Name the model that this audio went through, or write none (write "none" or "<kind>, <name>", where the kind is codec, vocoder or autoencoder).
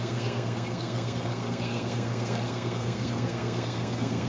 codec, SNAC